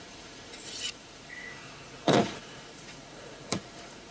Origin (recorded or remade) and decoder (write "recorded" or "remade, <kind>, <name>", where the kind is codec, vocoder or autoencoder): remade, vocoder, Vocos